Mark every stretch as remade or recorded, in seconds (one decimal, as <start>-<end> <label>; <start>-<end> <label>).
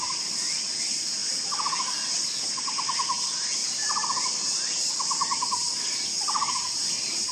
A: 0.0-3.6 recorded; 3.6-4.9 remade; 4.9-7.3 recorded